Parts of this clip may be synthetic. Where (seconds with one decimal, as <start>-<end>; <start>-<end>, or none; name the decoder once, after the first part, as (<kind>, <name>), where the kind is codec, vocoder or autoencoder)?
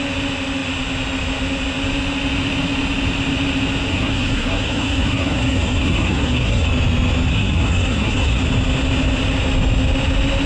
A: 3.9-6.7 (codec, SNAC); 7.3-8.4